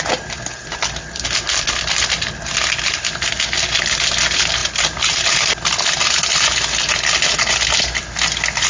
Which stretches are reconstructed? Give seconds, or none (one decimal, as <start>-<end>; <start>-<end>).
none